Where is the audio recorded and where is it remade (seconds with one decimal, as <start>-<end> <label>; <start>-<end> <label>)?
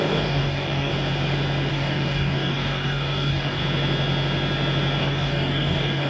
0.0-0.9 remade; 0.9-1.7 recorded; 1.7-3.6 remade; 3.6-5.0 recorded; 5.0-6.1 remade